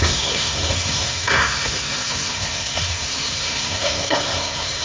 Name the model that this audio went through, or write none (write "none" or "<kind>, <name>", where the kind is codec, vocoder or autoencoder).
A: codec, SNAC